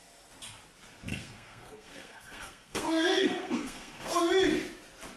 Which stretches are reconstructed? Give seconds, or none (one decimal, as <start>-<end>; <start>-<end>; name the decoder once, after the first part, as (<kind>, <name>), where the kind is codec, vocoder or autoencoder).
1.1-4.2 (codec, SNAC)